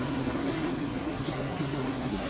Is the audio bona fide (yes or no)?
no